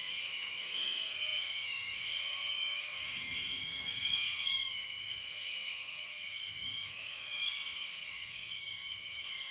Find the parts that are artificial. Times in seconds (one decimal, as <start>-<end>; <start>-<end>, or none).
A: 0.0-9.5